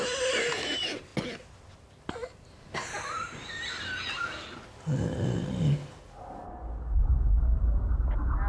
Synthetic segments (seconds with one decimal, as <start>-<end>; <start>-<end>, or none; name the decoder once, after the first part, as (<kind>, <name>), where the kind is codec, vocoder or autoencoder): 0.0-1.1 (vocoder, BigVGAN v2); 2.1-3.4; 6.7-8.5